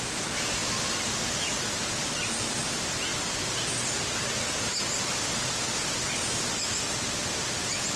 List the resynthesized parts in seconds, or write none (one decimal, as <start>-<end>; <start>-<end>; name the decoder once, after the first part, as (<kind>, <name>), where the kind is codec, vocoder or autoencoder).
none